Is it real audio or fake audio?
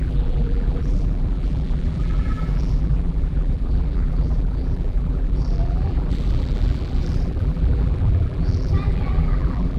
fake